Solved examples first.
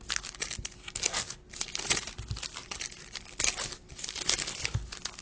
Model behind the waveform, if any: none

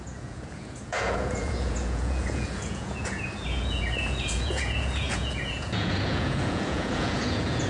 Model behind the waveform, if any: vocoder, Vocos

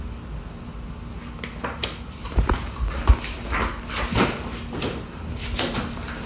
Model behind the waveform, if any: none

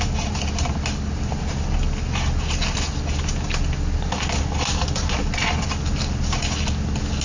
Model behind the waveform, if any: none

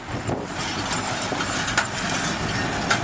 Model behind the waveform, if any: none